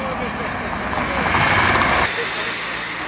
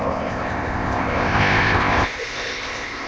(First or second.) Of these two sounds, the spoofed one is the second